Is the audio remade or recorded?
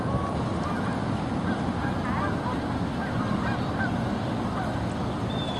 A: recorded